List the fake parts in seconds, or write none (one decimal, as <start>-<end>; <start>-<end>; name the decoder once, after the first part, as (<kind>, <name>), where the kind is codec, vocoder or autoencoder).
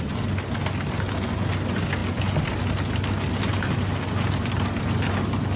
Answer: none